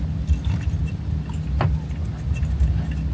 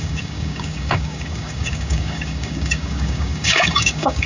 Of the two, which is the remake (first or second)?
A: second